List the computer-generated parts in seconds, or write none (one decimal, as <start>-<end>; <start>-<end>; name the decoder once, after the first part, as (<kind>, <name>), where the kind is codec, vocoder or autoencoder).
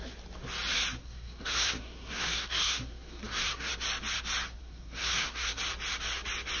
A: 1.0-3.7 (codec, SNAC); 4.6-5.6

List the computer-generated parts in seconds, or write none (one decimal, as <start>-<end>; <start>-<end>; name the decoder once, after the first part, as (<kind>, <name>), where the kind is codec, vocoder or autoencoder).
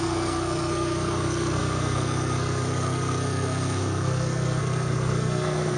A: 0.0-5.8 (codec, SNAC)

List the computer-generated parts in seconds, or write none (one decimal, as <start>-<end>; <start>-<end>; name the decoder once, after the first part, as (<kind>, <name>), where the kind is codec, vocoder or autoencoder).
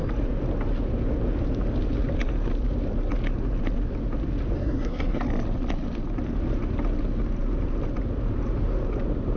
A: 4.6-5.2 (codec, SNAC)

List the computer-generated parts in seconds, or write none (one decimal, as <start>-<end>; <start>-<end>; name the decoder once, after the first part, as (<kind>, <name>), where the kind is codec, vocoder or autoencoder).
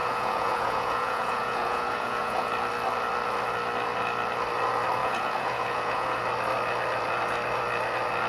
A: 0.0-2.5 (vocoder, Vocos); 5.0-6.2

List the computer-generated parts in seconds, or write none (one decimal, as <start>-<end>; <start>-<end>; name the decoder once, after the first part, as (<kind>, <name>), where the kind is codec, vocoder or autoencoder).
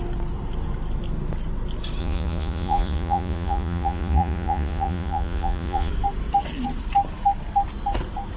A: 2.0-5.9 (vocoder, Vocos)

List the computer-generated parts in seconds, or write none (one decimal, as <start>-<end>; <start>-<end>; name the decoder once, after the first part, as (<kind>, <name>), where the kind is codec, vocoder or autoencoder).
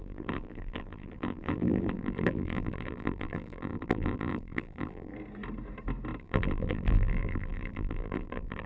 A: 0.0-5.1 (vocoder, BigVGAN v2); 6.2-8.7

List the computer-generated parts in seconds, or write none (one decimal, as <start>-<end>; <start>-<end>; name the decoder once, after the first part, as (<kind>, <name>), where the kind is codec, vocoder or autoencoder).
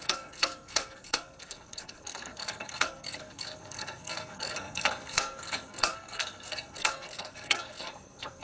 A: 0.0-8.4 (codec, SNAC)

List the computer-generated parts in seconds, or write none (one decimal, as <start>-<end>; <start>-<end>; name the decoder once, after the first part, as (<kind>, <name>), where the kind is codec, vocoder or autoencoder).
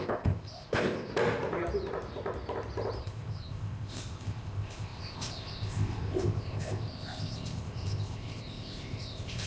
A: 0.0-1.1 (codec, ZipCodec); 3.0-9.5